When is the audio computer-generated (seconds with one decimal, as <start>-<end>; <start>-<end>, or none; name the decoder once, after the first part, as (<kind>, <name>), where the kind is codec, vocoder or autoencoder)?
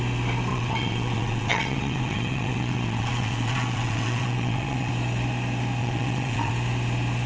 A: 0.5-4.9 (vocoder, WaveNeXt); 5.8-6.5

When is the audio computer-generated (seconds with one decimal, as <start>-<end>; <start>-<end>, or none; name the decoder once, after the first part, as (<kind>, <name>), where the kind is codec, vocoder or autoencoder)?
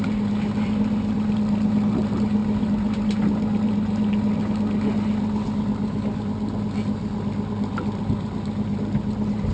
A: none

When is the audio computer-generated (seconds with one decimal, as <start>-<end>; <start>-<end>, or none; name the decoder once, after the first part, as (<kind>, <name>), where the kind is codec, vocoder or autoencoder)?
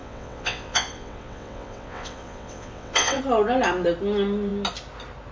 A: 0.0-3.2 (vocoder, WaveNeXt)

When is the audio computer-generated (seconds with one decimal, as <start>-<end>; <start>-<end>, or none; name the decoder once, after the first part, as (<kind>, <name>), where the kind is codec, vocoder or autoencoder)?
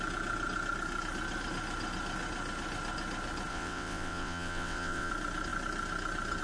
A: 3.5-5.1 (vocoder, WaveNeXt)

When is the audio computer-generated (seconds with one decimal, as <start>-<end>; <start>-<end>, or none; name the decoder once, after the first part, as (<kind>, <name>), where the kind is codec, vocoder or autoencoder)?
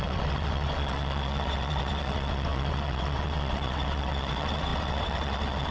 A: 0.0-5.7 (vocoder, WaveNeXt)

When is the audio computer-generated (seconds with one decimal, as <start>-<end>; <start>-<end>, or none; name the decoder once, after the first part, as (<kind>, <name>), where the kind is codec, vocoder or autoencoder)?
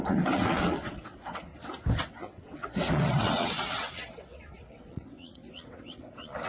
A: 0.0-1.5 (vocoder, WaveNeXt); 2.1-6.5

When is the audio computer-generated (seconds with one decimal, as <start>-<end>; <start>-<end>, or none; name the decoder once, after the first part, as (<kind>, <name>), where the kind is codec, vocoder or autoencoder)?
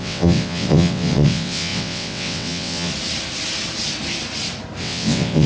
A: 0.0-2.9 (vocoder, WaveNeXt); 4.8-5.5